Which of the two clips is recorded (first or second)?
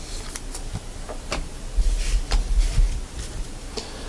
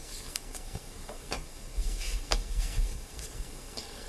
first